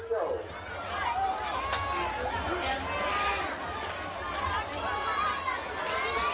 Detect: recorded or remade recorded